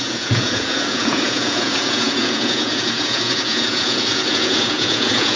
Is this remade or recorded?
remade